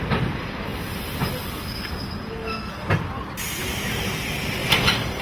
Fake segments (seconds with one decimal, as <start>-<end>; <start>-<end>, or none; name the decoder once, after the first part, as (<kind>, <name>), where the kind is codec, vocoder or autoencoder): 0.7-1.3 (vocoder, BigVGAN v2); 4.6-5.2